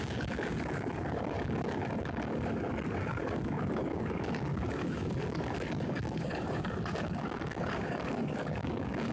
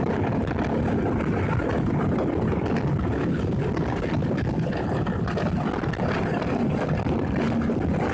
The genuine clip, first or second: second